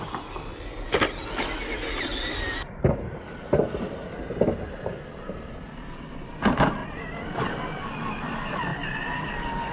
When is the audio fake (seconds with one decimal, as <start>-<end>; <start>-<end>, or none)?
none